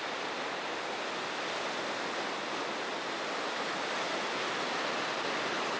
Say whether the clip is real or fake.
real